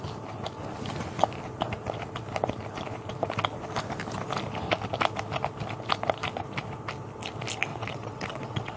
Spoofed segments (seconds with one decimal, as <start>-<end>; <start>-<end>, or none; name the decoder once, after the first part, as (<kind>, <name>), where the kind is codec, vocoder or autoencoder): 7.7-8.8 (vocoder, WaveNeXt)